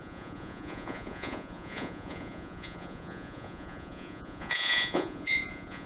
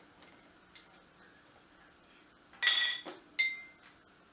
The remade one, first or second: first